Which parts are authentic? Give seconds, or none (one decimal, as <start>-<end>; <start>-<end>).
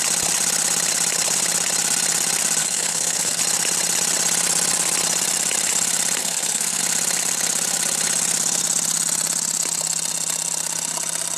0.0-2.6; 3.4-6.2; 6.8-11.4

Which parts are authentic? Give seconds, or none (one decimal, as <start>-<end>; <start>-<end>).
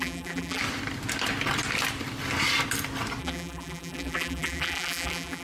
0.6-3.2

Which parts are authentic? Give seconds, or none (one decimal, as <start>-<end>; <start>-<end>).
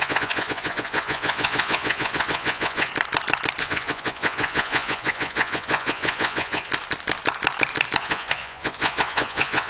2.9-3.6; 6.7-8.0